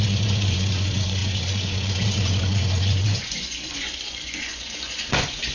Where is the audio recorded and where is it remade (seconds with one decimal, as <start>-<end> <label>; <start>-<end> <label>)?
0.0-5.5 remade